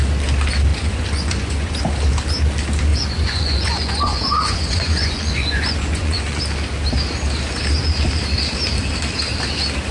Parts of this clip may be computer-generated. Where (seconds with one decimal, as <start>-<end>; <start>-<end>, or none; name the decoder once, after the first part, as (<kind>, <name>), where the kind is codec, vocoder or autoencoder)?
0.7-1.8 (vocoder, Vocos); 2.9-6.4